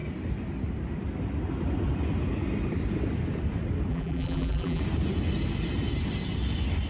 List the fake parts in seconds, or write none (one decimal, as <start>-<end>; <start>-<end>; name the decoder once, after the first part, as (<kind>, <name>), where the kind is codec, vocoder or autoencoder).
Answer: 3.9-4.8 (vocoder, BigVGAN v2)